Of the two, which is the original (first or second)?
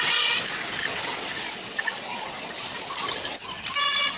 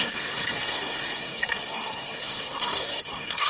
first